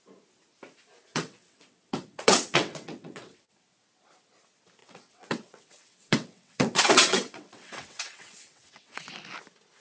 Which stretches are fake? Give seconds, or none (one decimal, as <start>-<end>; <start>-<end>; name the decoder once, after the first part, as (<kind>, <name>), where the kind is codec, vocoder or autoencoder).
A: 1.1-3.6 (vocoder, WaveNeXt); 4.8-9.1